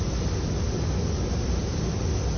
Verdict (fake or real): real